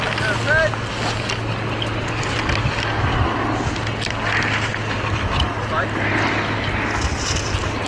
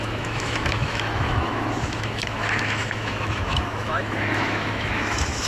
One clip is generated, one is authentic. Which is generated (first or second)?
second